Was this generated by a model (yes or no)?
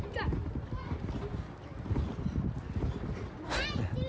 no